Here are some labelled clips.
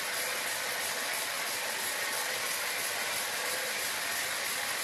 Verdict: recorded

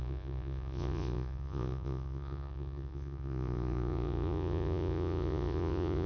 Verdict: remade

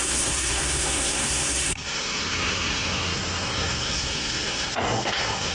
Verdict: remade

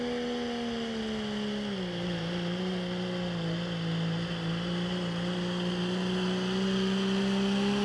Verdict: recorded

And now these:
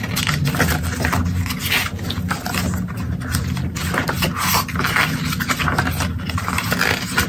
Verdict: recorded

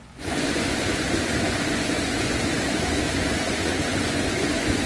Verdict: remade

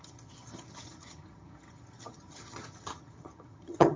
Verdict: remade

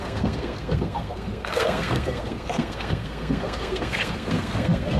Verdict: remade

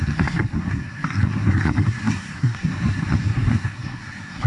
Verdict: remade